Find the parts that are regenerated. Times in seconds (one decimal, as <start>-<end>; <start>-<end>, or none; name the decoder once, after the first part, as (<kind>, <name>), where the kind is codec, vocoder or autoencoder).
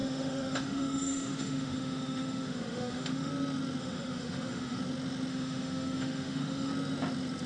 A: 0.0-3.3 (autoencoder, DAC-VAE); 3.8-4.8; 5.3-6.7